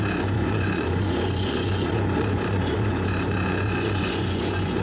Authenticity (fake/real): fake